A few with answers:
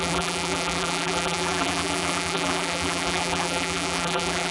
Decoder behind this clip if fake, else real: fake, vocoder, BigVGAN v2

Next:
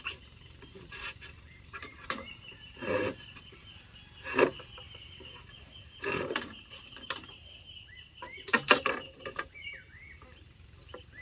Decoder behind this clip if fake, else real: fake, vocoder, BigVGAN v2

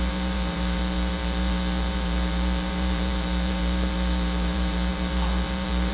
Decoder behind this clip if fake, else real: fake, vocoder, BigVGAN v2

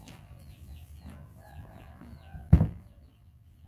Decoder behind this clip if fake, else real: fake, vocoder, BigVGAN v2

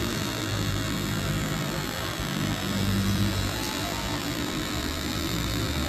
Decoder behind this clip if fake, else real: fake, vocoder, BigVGAN v2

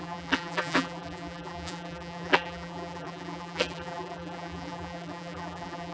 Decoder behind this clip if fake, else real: fake, vocoder, BigVGAN v2